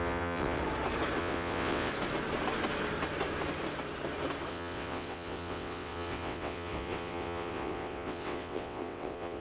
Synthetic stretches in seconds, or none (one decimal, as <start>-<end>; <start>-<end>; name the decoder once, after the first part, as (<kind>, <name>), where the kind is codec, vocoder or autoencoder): 0.0-0.6 (vocoder, WaveNeXt); 1.2-1.9; 4.5-9.4